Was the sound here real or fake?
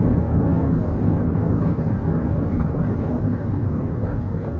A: fake